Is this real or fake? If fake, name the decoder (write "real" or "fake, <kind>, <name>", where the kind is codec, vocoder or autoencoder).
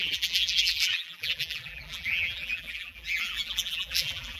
fake, vocoder, BigVGAN v2